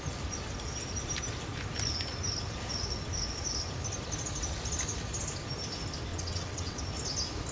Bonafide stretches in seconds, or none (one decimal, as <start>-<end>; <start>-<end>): 0.0-6.1; 6.8-7.5